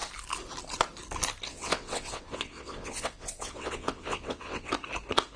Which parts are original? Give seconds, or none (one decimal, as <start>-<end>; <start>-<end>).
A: 0.0-1.5; 4.7-5.4